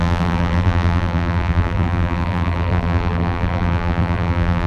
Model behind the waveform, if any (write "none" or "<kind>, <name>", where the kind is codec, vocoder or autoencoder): vocoder, BigVGAN v2